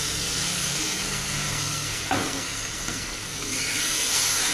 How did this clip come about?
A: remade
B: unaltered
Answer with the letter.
A